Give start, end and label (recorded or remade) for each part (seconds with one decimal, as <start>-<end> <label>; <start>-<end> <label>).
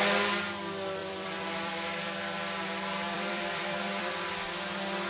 0.0-1.0 recorded; 1.0-4.1 remade; 4.1-5.1 recorded